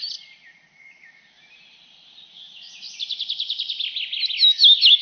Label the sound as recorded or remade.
recorded